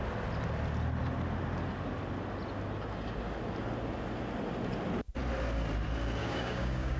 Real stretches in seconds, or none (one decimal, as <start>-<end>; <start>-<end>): 0.0-6.2